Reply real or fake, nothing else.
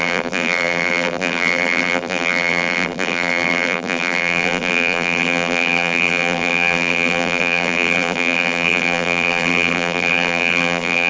fake